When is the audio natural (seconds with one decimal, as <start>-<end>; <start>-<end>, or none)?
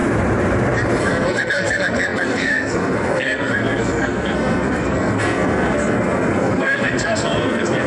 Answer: 0.0-1.0